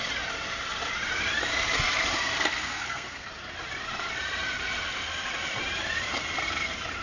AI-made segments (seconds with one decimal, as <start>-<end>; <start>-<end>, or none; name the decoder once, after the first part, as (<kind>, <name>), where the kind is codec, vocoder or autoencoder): 2.5-3.3 (codec, SNAC)